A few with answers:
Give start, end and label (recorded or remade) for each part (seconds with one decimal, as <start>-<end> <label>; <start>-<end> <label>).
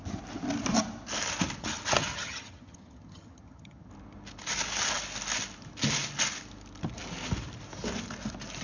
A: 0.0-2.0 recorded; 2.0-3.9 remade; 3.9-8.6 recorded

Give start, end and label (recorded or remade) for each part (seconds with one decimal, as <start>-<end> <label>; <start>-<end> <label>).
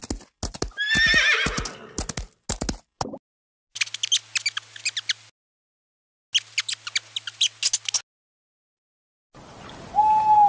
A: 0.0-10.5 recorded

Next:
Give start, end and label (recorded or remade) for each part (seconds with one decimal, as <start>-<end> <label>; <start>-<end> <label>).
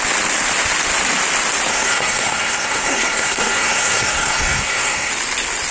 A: 0.0-1.7 recorded; 1.7-5.1 remade; 5.1-5.7 recorded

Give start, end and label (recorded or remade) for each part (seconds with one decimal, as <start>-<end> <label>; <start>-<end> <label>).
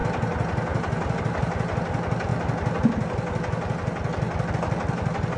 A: 0.0-5.4 recorded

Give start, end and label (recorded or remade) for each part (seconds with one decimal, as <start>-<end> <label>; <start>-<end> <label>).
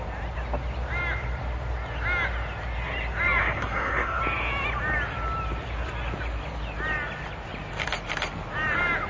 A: 0.0-3.4 recorded; 3.4-4.2 remade; 4.2-9.1 recorded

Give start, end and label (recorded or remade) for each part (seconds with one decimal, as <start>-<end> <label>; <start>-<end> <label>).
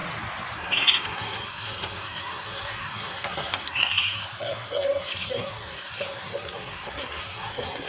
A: 0.0-0.6 recorded; 0.6-7.9 remade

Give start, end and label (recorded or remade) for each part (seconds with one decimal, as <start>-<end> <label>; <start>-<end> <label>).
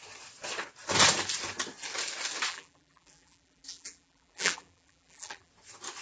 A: 0.0-2.5 recorded; 2.5-5.5 remade; 5.5-6.0 recorded